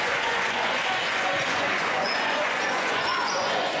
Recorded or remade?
remade